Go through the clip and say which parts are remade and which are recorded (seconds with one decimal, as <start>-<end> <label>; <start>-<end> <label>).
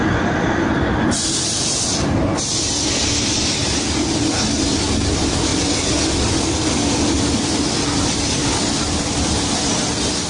0.0-10.3 recorded